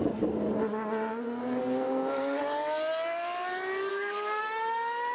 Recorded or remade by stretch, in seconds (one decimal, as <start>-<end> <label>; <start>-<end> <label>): 0.0-1.6 recorded; 1.6-2.4 remade; 2.4-3.9 recorded; 3.9-4.4 remade; 4.4-5.1 recorded